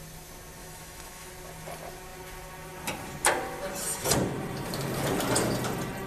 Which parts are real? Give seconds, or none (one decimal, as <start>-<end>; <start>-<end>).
0.0-0.6; 1.3-6.1